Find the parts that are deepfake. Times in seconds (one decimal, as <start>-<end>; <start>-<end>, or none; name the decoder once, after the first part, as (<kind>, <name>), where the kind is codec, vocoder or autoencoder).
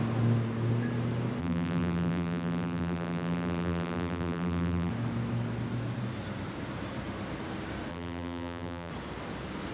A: 1.4-4.9 (vocoder, BigVGAN v2); 7.9-8.9